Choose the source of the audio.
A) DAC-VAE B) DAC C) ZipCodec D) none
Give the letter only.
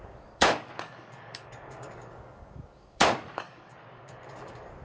B